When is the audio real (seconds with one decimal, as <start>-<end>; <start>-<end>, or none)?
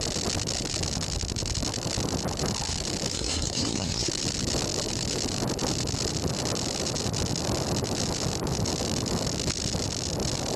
0.0-3.1; 4.1-10.6